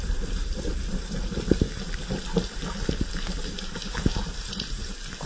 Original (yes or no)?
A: yes